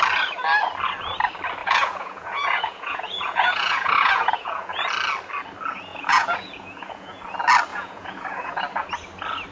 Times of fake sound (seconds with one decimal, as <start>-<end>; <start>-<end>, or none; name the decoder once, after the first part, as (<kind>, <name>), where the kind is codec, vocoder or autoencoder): 1.6-4.8 (vocoder, Vocos); 5.9-7.2; 7.7-8.6